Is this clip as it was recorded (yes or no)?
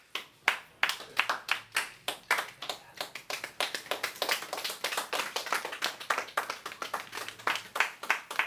yes